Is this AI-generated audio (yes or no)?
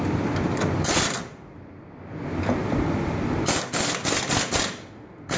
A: no